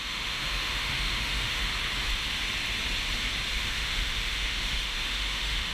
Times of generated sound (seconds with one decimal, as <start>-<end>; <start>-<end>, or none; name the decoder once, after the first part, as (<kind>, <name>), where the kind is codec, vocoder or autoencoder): 0.0-1.7 (autoencoder, DAC-VAE); 3.5-5.7